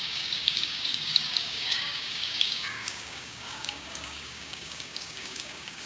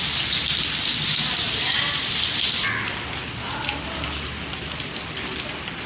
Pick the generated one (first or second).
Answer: first